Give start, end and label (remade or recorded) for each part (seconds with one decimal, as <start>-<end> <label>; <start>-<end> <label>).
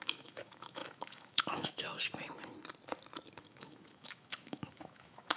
0.0-1.9 remade; 1.9-3.4 recorded; 3.4-5.4 remade